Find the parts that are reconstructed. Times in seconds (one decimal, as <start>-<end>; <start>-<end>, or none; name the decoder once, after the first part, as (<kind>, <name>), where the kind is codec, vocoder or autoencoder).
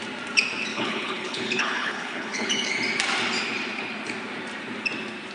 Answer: 0.7-2.7 (codec, HILCodec)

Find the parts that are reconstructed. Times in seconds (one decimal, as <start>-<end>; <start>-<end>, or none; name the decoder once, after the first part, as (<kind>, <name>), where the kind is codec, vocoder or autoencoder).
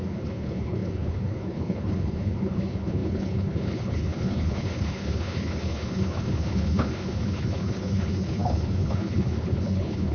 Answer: 0.0-10.1 (codec, HILCodec)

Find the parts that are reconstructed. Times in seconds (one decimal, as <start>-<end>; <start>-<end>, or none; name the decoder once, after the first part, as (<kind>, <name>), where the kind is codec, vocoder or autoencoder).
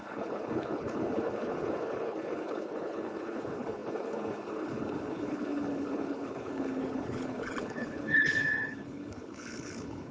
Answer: 0.0-10.1 (codec, HILCodec)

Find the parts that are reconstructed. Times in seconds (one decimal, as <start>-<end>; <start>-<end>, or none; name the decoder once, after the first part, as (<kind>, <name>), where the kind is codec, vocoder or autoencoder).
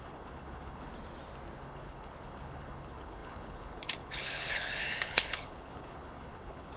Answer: 0.0-0.9 (codec, HILCodec); 1.6-6.8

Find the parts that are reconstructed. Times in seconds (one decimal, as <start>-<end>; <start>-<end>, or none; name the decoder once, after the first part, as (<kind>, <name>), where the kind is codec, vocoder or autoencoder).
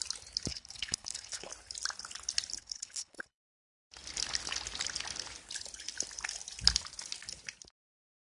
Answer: 0.5-1.5 (codec, HILCodec); 2.6-3.4